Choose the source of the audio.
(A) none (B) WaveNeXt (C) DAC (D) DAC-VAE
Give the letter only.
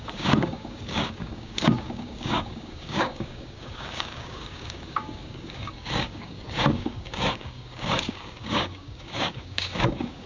C